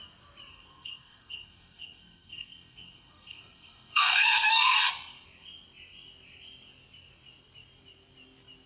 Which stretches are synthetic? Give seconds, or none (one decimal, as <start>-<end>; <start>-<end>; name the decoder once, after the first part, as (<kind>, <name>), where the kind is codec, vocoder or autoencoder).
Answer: 0.5-4.9 (codec, SNAC)

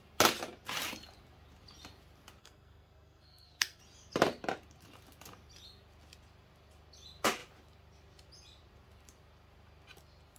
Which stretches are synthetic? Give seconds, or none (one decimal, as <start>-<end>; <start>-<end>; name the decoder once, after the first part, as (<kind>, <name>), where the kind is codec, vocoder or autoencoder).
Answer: 2.4-3.8 (codec, SNAC)

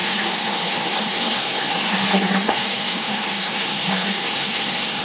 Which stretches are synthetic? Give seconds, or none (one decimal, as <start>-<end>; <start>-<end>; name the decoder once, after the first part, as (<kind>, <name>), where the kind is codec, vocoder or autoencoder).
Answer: 0.0-5.0 (codec, SNAC)

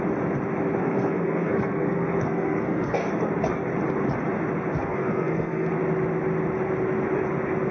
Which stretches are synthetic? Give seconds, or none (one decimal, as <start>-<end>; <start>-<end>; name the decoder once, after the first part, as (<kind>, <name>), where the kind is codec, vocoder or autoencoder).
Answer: 0.8-3.1 (codec, SNAC); 4.7-5.7

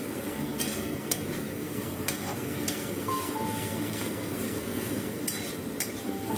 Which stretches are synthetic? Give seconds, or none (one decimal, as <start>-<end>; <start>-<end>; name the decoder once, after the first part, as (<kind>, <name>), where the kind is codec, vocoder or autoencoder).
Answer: 0.0-5.2 (codec, SNAC); 6.0-6.4

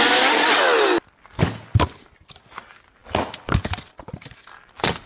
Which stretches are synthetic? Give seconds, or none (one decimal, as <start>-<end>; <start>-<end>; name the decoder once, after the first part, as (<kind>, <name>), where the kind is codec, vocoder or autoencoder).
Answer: none